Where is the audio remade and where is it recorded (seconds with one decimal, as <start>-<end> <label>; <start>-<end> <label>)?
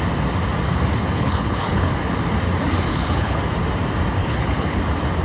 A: 0.0-1.0 recorded; 1.0-1.9 remade; 1.9-2.9 recorded; 2.9-3.4 remade; 3.4-4.2 recorded; 4.2-4.8 remade; 4.8-5.2 recorded